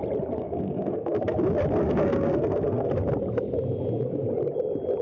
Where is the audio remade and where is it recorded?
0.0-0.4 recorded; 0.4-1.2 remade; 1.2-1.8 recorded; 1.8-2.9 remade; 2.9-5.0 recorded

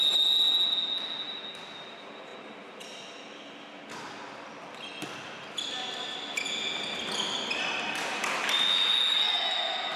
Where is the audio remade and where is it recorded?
0.0-10.0 recorded

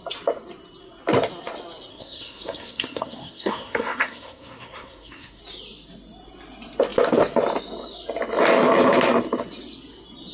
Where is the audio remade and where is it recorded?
0.0-1.9 recorded; 1.9-5.4 remade; 5.4-10.3 recorded